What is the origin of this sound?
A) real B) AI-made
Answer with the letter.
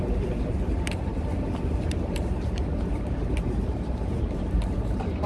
B